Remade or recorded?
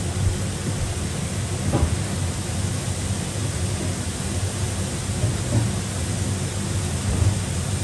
recorded